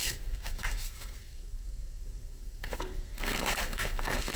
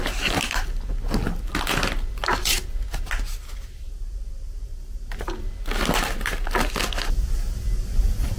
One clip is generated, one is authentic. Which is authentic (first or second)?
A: second